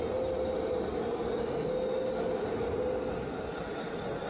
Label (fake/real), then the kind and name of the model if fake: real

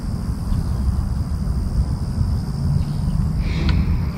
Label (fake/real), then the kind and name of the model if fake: real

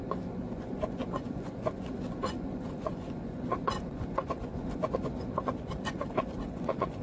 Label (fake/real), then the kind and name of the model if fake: fake, vocoder, Vocos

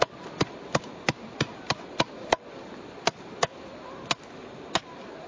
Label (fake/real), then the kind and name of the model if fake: real